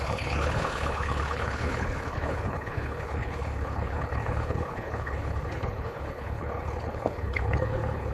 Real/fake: fake